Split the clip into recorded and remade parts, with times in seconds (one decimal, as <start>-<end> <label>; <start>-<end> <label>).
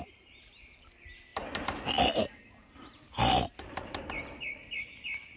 0.0-5.4 recorded